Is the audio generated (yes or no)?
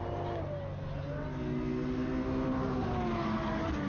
no